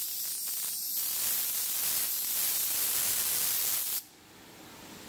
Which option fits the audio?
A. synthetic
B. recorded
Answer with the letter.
B